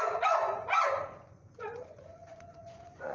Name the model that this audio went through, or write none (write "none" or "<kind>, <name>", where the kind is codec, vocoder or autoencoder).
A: vocoder, Vocos